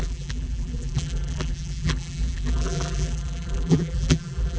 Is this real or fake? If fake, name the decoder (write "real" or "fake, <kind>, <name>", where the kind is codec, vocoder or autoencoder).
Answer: fake, vocoder, BigVGAN v2